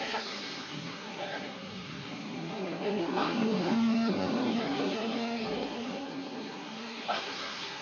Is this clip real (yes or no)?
no